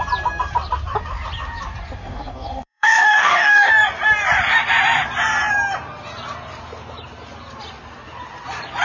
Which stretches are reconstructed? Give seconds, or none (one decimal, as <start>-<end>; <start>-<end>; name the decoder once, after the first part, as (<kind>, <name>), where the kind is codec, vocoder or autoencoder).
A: 2.0-3.7 (codec, DAC)